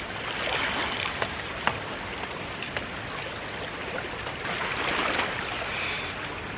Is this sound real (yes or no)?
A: yes